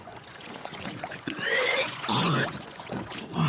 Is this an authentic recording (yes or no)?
no